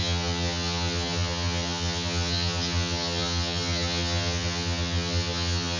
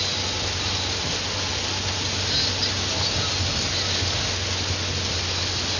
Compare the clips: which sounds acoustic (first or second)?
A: second